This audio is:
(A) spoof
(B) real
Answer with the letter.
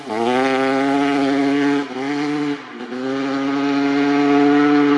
B